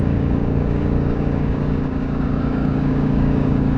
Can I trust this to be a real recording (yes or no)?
no